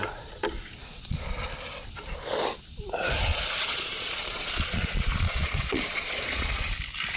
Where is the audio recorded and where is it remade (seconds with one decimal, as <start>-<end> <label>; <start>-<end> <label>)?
0.0-0.8 recorded; 0.8-1.3 remade; 1.3-3.3 recorded; 3.3-6.6 remade; 6.6-7.2 recorded